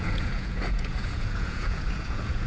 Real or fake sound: fake